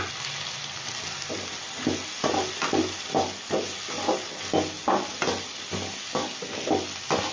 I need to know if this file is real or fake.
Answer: real